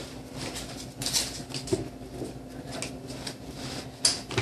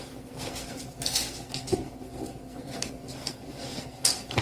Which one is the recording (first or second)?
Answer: first